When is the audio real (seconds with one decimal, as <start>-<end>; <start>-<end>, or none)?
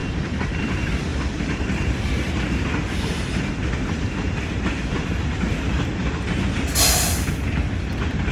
0.0-1.1; 5.9-8.3